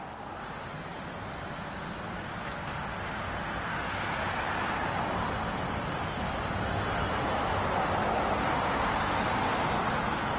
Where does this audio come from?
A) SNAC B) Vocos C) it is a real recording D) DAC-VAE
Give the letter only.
C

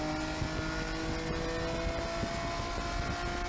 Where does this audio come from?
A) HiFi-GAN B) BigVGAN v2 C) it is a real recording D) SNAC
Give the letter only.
C